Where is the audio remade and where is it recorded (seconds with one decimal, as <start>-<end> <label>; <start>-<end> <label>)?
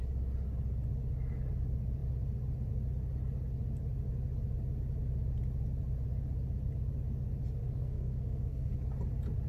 0.0-7.6 recorded; 7.6-8.7 remade; 8.7-9.5 recorded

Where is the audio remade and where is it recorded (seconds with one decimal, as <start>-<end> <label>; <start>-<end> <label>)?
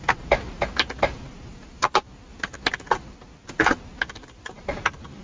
0.0-5.2 recorded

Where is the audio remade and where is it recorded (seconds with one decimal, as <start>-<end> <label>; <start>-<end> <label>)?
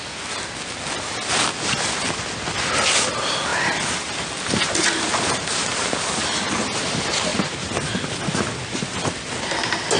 0.0-7.3 recorded; 7.3-8.1 remade; 8.1-10.0 recorded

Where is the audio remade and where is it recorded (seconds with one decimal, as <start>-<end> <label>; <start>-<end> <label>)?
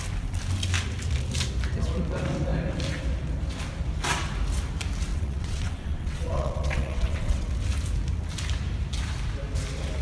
0.0-5.1 recorded; 5.1-7.5 remade; 7.5-10.0 recorded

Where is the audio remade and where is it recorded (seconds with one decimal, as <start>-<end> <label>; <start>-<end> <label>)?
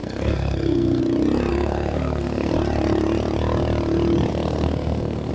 0.0-1.0 remade; 1.0-1.5 recorded; 1.5-2.5 remade; 2.5-4.3 recorded; 4.3-5.3 remade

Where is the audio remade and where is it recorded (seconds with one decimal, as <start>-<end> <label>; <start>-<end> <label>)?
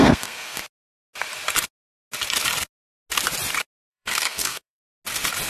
0.0-0.6 remade; 0.6-3.9 recorded; 3.9-4.8 remade; 4.8-5.5 recorded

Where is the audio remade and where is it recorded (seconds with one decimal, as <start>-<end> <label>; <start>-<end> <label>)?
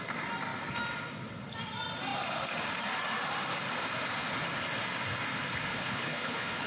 0.0-5.7 recorded; 5.7-6.7 remade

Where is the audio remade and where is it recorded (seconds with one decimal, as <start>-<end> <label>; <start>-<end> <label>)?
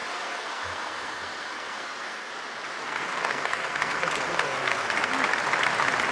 0.0-2.3 remade; 2.3-2.8 recorded; 2.8-5.1 remade; 5.1-6.1 recorded